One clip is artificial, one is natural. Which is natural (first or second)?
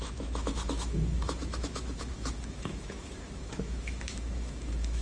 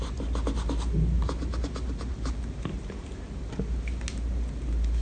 second